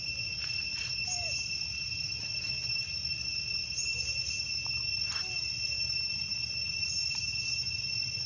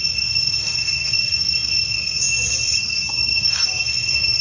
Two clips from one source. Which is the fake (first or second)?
second